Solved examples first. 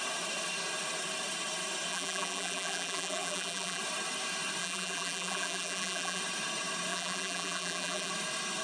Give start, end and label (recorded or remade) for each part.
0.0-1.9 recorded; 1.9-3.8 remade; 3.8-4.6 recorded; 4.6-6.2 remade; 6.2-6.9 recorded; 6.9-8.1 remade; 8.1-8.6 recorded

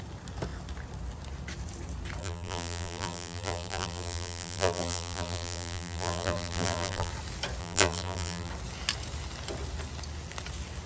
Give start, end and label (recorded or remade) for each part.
0.0-2.2 recorded; 2.2-7.1 remade; 7.1-7.6 recorded; 7.6-8.5 remade; 8.5-10.9 recorded